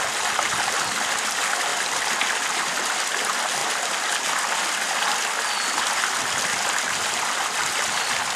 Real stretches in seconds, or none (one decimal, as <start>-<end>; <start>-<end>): 0.0-8.4